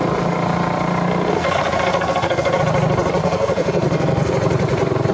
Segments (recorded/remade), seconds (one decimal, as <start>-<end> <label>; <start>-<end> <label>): 0.0-1.3 recorded; 1.3-2.6 remade; 2.6-3.2 recorded; 3.2-4.3 remade; 4.3-5.1 recorded

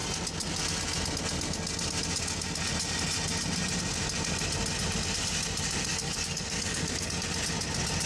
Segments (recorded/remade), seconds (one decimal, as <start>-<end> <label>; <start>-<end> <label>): 0.0-5.9 recorded; 5.9-7.2 remade; 7.2-8.1 recorded

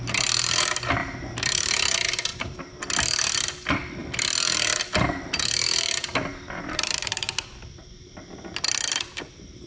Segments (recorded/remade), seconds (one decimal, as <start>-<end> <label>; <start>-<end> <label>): 0.0-1.0 recorded; 1.0-1.7 remade; 1.7-2.3 recorded; 2.3-2.8 remade; 2.8-6.3 recorded; 6.3-7.4 remade; 7.4-9.7 recorded